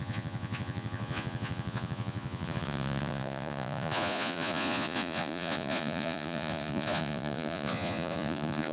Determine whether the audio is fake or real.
fake